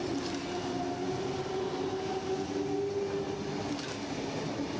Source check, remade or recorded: recorded